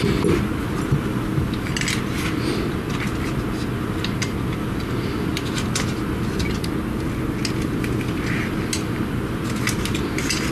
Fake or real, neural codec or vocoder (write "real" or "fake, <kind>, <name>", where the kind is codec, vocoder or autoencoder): real